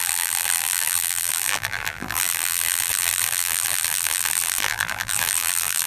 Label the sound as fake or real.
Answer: fake